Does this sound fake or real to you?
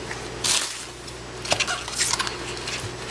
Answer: real